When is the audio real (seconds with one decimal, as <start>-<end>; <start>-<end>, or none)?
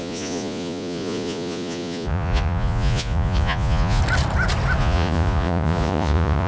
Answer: 4.0-4.8